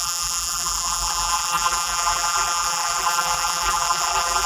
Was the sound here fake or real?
fake